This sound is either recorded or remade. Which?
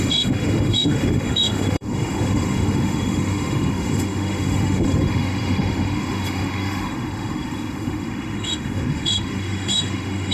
remade